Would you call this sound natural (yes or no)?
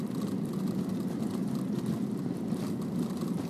no